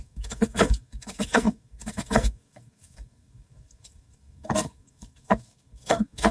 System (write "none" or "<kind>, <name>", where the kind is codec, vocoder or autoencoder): codec, SNAC